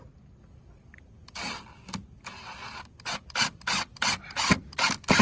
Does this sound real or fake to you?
real